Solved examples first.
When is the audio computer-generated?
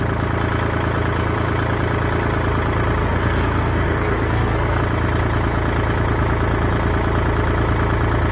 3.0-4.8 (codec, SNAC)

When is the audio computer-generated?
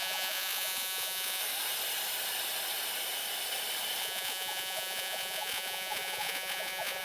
0.0-1.4 (vocoder, Vocos); 4.0-7.0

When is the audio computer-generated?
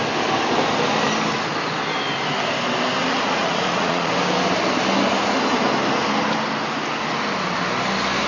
3.0-4.1 (vocoder, Vocos)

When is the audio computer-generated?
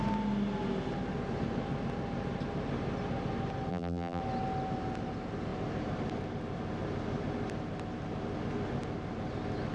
3.7-4.2 (vocoder, BigVGAN v2)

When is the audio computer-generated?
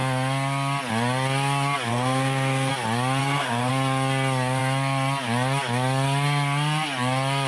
1.9-2.7 (codec, SNAC); 3.2-3.7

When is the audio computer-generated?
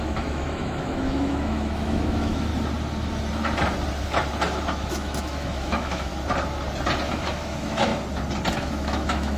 0.0-2.5 (autoencoder, DAC-VAE); 4.9-6.1; 7.1-7.9; 8.5-9.4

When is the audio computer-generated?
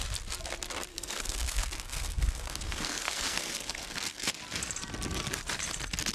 0.9-4.3 (codec, SNAC)